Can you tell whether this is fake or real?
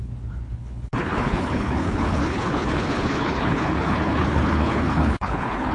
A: fake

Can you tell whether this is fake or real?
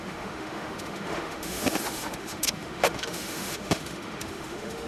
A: fake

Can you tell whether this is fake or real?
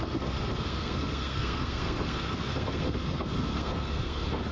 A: fake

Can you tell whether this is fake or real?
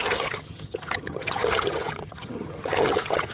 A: fake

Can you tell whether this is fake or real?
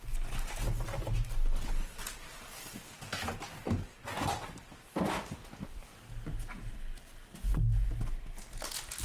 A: real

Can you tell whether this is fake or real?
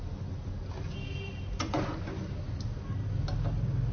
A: real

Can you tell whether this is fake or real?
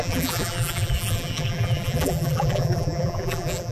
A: fake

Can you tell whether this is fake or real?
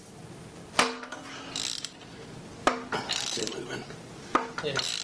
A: real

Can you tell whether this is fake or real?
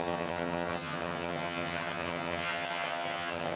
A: fake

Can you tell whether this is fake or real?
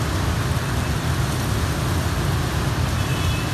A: real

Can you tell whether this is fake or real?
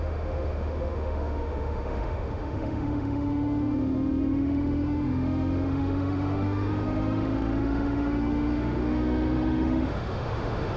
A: fake